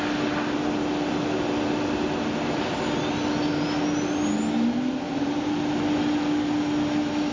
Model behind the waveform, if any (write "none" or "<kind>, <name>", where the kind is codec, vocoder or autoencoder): none